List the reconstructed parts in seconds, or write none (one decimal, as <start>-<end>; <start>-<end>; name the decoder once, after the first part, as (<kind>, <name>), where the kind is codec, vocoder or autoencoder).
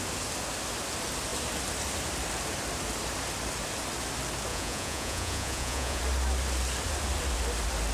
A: 4.5-6.0 (vocoder, Vocos)